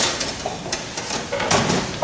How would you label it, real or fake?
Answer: real